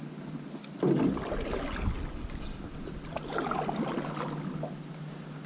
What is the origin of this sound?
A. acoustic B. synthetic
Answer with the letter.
A